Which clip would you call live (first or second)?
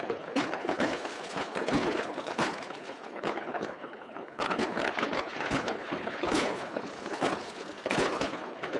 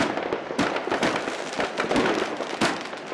second